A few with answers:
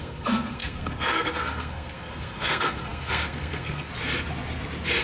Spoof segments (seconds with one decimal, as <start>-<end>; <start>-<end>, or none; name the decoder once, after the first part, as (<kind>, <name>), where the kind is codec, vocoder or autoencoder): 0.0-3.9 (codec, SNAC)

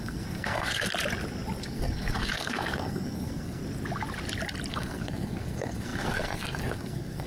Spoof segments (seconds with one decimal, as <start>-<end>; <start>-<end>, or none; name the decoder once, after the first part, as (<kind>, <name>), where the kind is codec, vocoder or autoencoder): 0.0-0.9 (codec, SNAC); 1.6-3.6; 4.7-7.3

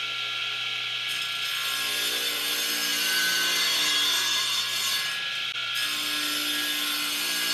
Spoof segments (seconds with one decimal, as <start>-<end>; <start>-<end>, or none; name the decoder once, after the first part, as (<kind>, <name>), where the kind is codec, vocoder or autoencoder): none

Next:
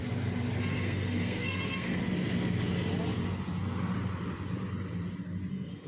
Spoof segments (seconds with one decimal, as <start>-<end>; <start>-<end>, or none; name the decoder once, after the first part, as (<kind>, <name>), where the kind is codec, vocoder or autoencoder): 0.6-2.0 (codec, SNAC); 5.5-5.9

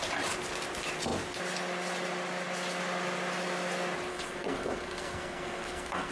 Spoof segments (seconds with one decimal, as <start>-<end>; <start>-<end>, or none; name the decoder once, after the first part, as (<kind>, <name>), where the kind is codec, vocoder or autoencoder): 4.1-6.1 (codec, SNAC)

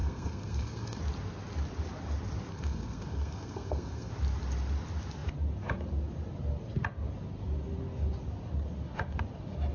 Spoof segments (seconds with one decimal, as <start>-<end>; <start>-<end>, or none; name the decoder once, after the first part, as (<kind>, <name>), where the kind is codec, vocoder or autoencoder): 0.0-1.0 (codec, SNAC); 2.5-4.1

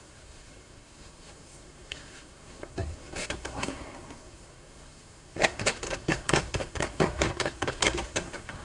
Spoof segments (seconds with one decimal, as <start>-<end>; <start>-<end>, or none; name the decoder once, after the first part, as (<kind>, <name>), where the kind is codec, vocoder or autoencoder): 0.0-8.6 (codec, SNAC)